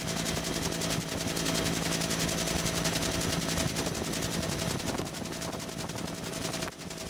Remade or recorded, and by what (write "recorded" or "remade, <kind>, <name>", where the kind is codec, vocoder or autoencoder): recorded